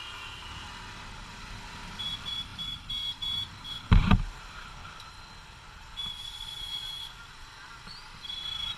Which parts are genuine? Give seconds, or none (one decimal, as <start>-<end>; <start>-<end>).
0.0-2.5; 4.1-6.0; 8.3-8.8